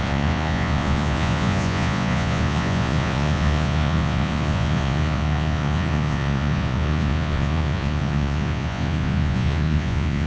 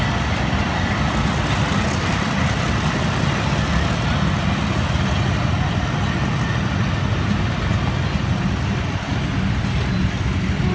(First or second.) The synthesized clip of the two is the first